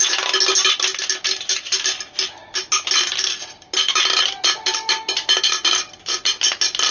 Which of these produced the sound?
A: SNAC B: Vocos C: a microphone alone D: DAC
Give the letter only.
C